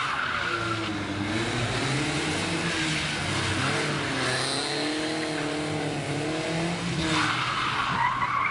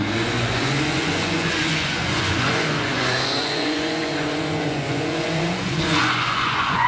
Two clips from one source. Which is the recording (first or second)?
first